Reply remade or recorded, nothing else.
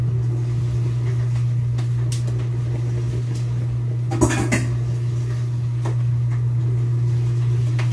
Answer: recorded